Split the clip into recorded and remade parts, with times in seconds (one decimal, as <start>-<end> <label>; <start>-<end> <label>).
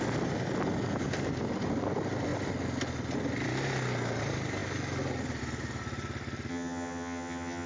0.0-6.5 recorded; 6.5-7.7 remade